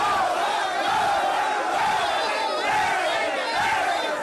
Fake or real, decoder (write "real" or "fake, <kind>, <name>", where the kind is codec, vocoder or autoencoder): real